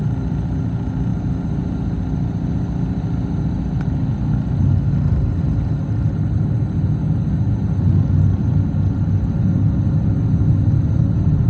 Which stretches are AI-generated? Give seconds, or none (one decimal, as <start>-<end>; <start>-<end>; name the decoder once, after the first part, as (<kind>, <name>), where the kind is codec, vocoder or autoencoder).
none